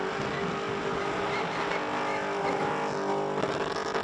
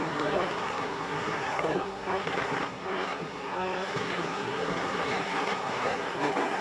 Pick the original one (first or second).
first